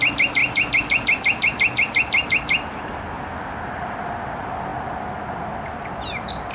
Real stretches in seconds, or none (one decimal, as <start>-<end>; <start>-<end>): 0.0-6.5